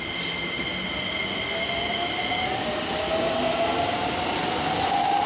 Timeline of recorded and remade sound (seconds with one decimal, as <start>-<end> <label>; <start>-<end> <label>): 0.0-5.3 recorded